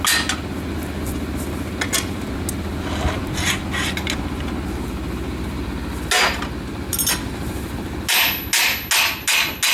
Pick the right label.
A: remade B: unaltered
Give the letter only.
B